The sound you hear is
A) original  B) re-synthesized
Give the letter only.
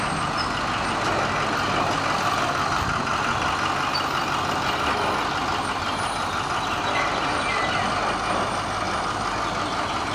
A